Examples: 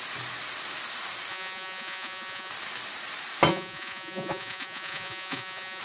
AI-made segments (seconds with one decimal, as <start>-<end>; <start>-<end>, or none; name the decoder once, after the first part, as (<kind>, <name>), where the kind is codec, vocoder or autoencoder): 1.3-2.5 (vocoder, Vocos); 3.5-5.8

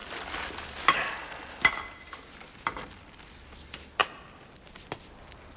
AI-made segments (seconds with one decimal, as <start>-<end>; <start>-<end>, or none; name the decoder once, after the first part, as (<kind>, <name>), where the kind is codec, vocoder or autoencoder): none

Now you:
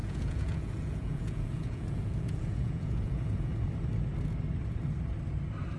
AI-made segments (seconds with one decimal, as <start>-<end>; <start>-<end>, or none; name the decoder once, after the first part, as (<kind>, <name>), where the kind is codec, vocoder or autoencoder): 0.0-3.5 (vocoder, Vocos)